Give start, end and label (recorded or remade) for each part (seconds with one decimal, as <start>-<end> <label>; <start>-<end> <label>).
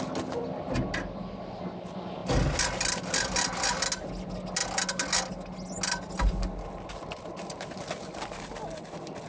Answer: 0.0-9.3 recorded